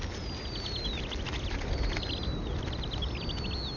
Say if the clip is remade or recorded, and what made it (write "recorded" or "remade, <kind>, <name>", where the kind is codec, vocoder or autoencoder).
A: recorded